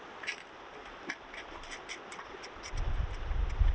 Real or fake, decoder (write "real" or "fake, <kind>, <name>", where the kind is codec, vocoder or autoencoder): real